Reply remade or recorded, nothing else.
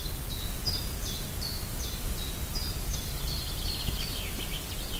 recorded